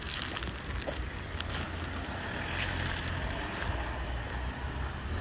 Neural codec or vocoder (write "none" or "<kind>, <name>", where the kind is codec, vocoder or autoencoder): none